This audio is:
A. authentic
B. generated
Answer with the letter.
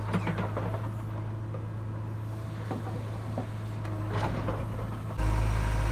A